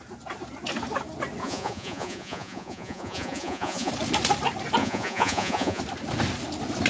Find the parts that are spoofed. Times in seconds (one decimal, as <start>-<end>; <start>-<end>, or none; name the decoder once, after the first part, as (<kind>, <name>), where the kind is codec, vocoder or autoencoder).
1.4-3.9 (vocoder, Vocos); 4.8-5.8